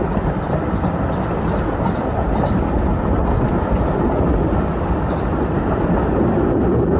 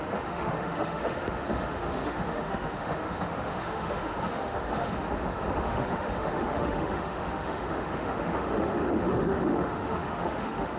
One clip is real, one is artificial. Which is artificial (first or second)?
second